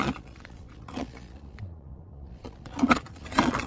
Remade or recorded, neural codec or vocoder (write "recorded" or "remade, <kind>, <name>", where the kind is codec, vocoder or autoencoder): remade, vocoder, Vocos